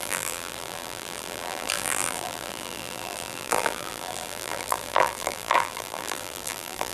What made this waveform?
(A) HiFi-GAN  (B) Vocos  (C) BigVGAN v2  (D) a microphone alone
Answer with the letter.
C